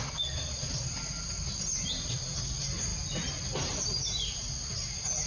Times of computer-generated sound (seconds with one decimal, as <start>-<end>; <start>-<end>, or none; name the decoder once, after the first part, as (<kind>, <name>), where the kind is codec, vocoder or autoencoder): none